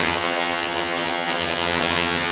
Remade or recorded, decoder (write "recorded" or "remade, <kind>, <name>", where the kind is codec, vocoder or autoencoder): remade, vocoder, HiFi-GAN